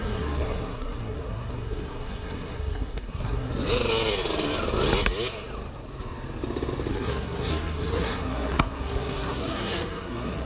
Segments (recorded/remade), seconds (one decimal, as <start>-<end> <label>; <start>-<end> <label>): 0.0-3.5 remade; 3.5-6.9 recorded; 6.9-10.5 remade